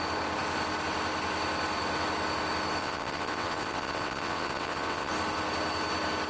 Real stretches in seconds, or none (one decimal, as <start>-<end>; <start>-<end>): 0.0-2.8; 5.1-6.3